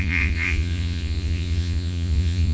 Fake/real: fake